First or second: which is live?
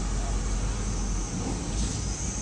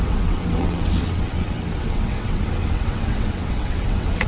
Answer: first